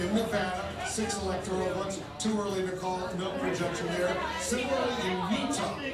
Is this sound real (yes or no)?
yes